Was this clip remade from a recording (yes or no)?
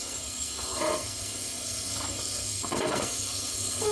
yes